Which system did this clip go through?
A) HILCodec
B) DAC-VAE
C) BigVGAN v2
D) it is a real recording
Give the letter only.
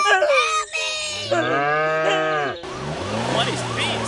D